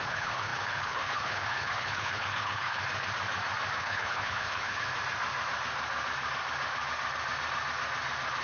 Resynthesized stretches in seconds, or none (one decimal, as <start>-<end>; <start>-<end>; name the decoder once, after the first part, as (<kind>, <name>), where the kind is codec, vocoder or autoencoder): 0.0-2.8 (codec, HILCodec); 3.8-4.9